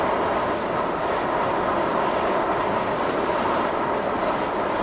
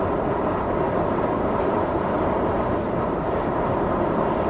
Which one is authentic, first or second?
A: first